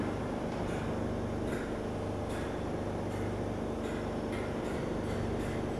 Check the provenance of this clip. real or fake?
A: real